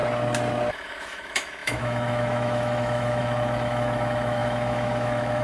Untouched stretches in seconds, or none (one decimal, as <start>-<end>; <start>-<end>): 0.0-0.7